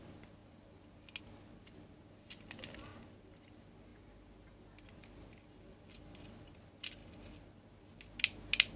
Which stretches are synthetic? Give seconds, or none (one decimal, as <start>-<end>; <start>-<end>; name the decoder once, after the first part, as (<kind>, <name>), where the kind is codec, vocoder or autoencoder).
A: none